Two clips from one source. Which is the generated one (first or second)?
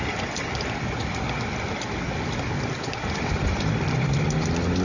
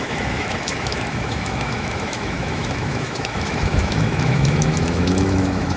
second